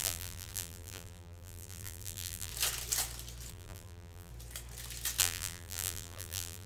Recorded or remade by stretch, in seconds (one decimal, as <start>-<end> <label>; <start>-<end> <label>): 0.0-2.5 remade; 2.5-3.5 recorded; 3.5-4.3 remade; 4.3-5.2 recorded; 5.2-6.7 remade